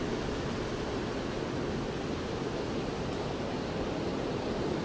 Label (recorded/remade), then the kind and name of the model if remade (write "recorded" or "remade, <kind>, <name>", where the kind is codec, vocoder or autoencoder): recorded